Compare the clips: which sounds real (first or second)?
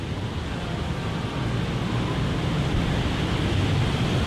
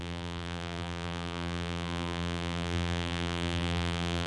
first